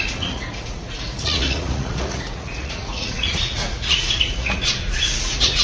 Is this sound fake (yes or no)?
yes